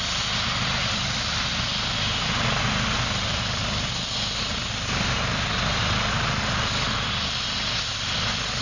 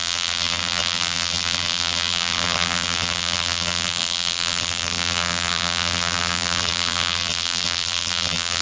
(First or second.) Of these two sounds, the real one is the first